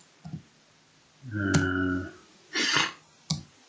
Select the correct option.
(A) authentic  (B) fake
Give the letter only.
A